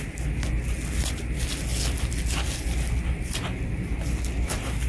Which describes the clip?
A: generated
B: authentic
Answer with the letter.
B